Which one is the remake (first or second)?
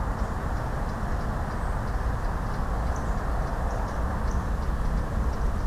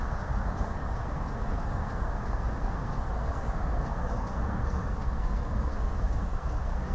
second